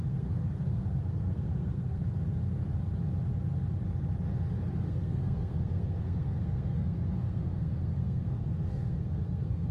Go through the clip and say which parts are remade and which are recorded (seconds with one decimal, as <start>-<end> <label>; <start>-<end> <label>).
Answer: 0.0-2.0 remade; 2.0-4.6 recorded; 4.6-9.7 remade